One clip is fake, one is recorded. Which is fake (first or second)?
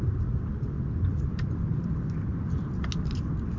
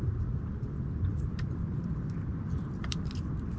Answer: second